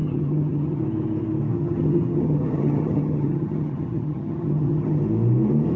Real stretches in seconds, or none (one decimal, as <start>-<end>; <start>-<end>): 0.8-1.5; 5.0-5.8